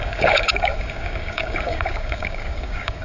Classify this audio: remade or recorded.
remade